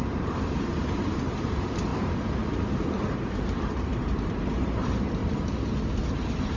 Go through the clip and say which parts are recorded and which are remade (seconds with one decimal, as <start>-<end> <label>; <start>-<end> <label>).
0.0-5.2 remade; 5.2-5.9 recorded; 5.9-6.6 remade